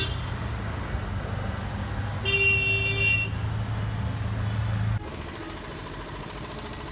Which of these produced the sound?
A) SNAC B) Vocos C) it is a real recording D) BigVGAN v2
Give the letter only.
C